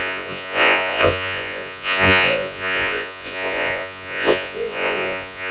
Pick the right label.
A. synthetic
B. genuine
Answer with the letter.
A